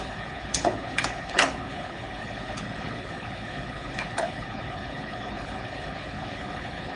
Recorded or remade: remade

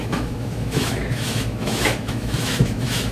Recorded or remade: remade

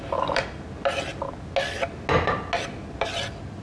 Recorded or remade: recorded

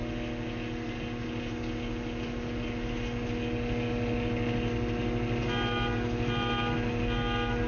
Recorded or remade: recorded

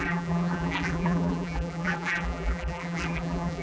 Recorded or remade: remade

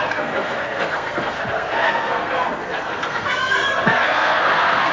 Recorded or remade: remade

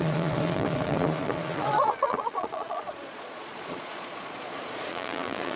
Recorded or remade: remade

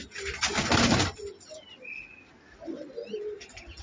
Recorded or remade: recorded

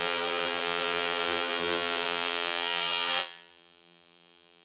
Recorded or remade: remade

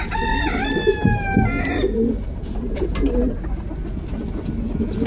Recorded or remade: recorded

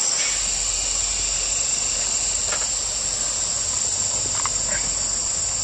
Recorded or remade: recorded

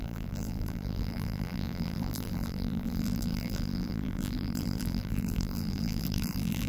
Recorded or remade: remade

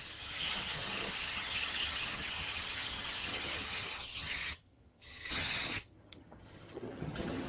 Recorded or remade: remade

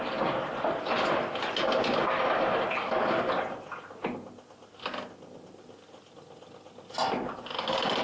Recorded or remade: recorded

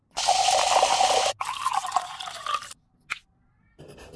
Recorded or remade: recorded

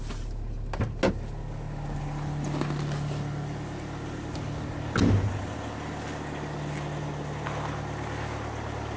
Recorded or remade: recorded